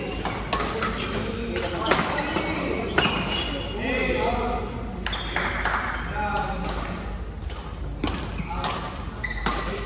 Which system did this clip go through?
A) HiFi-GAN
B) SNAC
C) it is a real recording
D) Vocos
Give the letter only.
C